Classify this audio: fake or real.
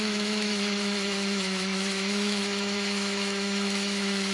fake